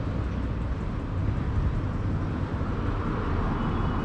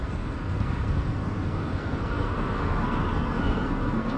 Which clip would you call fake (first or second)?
second